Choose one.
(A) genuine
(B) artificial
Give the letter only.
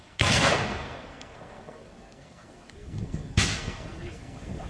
B